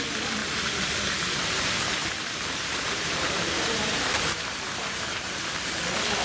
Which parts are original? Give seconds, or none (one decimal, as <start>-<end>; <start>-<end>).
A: 0.0-0.4; 1.1-2.0; 5.7-6.2